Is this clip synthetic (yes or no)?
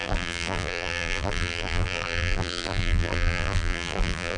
yes